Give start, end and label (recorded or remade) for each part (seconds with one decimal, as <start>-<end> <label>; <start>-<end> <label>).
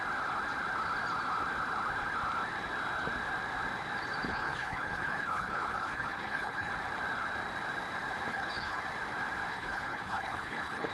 0.0-4.3 recorded; 4.3-6.7 remade; 6.7-8.3 recorded; 8.3-8.8 remade; 8.8-9.5 recorded; 9.5-10.9 remade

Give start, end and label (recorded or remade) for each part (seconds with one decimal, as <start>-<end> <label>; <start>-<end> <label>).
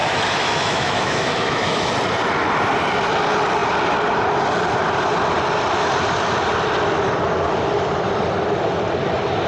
0.0-1.9 remade; 1.9-9.5 recorded